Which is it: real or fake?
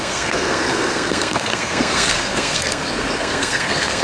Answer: fake